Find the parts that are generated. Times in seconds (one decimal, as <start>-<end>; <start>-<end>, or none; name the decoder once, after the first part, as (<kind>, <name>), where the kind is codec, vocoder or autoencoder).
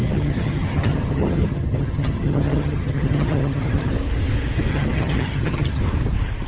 0.0-3.9 (vocoder, HiFi-GAN); 4.7-5.8